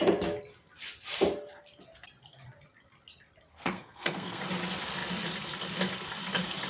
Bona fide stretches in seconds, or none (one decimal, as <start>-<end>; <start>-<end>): 0.0-3.5; 4.4-6.7